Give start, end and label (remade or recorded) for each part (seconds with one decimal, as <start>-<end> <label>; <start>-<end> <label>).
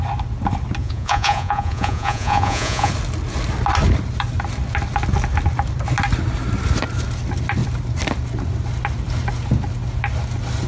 0.0-0.8 recorded; 0.8-2.9 remade; 2.9-10.7 recorded